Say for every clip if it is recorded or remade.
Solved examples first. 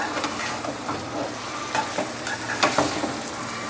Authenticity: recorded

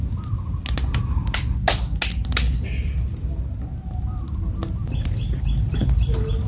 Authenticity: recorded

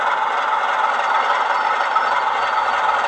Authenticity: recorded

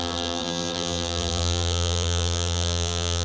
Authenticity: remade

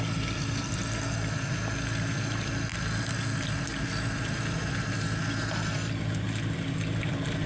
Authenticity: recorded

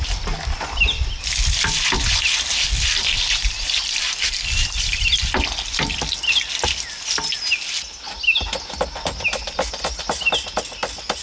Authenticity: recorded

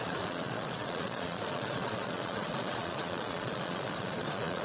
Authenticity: remade